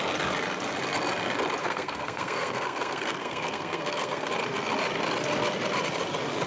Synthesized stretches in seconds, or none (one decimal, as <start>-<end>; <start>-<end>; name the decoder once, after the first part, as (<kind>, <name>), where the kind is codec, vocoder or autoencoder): 1.6-4.3 (codec, SNAC)